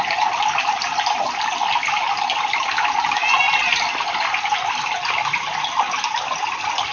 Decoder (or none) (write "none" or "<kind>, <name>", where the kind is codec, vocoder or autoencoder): none